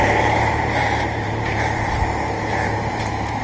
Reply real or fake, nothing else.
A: fake